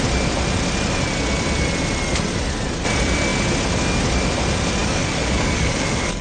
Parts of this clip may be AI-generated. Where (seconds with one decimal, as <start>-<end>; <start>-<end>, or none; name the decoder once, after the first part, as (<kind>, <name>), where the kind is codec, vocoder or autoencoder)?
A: 4.8-6.2 (codec, DAC)